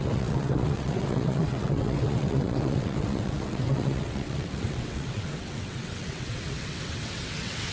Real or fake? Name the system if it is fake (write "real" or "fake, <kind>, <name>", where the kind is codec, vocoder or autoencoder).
fake, vocoder, WaveNeXt